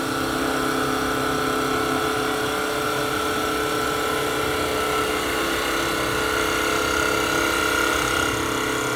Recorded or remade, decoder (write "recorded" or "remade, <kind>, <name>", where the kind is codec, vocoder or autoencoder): recorded